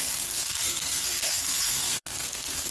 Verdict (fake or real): fake